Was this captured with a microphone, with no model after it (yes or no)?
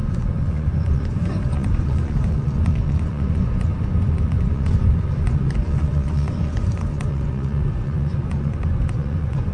no